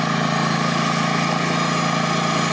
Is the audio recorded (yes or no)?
yes